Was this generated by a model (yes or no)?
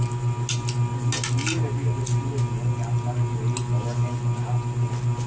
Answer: no